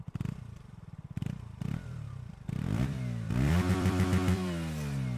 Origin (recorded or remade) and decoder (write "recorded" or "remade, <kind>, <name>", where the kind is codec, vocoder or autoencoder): remade, vocoder, BigVGAN v2